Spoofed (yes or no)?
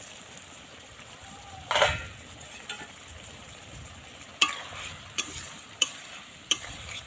yes